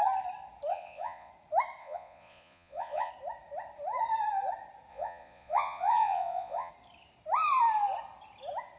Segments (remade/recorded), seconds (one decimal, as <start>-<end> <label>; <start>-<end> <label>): 0.0-0.7 recorded; 0.7-1.3 remade; 1.3-1.8 recorded; 1.8-3.1 remade; 3.1-4.9 recorded; 4.9-6.7 remade; 6.7-8.8 recorded